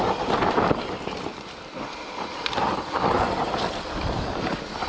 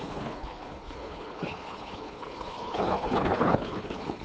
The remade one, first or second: second